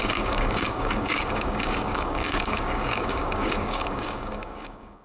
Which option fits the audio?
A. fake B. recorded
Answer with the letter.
A